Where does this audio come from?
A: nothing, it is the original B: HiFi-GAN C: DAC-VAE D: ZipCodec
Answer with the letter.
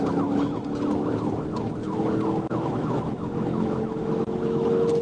C